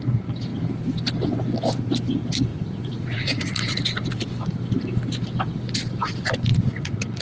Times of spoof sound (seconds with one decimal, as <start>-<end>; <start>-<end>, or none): 2.5-3.8; 6.5-7.2